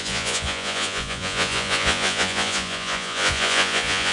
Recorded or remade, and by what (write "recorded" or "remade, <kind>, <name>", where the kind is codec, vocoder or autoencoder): remade, vocoder, Vocos